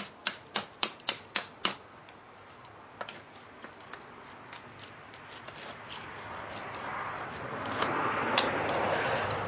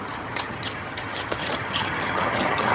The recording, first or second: first